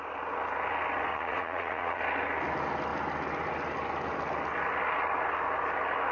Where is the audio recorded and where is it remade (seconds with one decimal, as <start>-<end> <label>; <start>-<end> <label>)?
0.0-1.1 recorded; 1.1-2.0 remade; 2.0-6.1 recorded